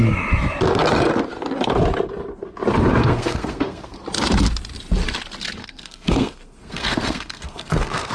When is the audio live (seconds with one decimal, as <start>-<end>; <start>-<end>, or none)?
0.0-3.0; 4.0-5.6